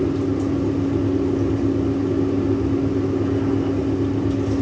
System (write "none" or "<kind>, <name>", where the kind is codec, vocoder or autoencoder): none